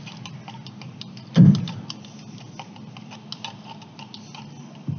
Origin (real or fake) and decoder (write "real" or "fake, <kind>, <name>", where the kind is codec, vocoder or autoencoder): real